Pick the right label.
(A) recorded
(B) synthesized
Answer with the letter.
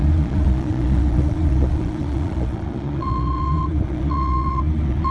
B